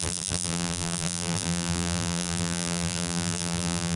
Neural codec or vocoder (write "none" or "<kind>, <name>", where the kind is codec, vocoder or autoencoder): vocoder, BigVGAN v2